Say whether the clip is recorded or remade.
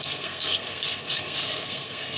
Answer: remade